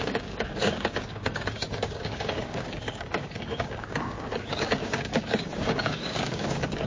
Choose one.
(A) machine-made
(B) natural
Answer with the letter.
A